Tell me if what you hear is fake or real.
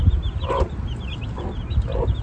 real